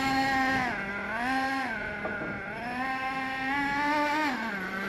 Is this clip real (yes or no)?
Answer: yes